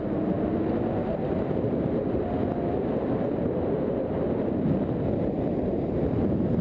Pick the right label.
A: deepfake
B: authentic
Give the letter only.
B